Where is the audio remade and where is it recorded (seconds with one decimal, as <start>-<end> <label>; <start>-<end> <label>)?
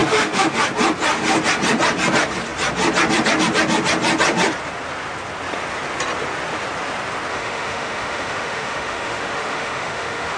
0.0-0.6 remade; 0.6-7.3 recorded; 7.3-10.4 remade